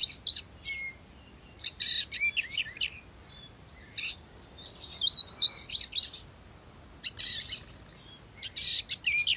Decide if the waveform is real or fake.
real